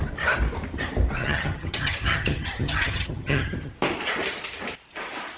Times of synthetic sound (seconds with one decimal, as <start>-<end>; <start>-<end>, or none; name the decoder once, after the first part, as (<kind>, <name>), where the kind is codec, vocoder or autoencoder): 1.2-3.7 (vocoder, HiFi-GAN)